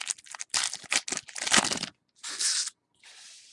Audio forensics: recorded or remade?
recorded